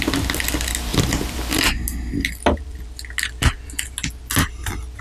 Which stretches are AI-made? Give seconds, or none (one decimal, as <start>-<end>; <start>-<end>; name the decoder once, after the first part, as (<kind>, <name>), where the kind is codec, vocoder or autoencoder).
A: none